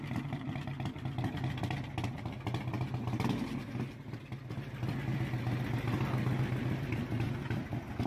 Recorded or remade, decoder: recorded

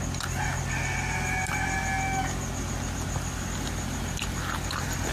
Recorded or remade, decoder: recorded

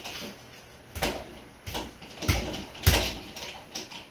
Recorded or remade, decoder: recorded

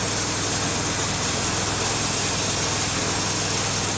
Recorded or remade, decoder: recorded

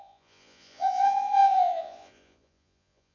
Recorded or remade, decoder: remade, vocoder, Vocos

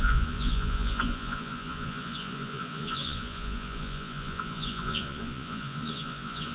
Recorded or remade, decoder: remade, vocoder, Vocos